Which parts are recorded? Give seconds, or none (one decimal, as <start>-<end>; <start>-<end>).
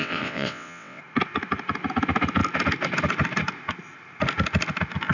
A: 1.0-5.1